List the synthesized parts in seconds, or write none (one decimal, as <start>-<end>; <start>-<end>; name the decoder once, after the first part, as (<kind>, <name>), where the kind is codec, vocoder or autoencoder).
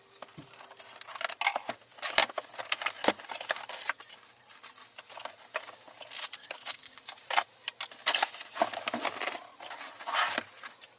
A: 6.4-7.0 (codec, DAC)